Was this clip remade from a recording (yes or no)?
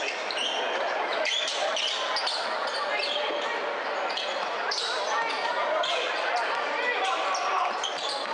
no